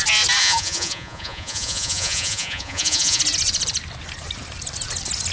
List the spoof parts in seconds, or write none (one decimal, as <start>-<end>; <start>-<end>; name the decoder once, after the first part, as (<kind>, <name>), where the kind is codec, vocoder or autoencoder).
0.4-3.2 (vocoder, Vocos)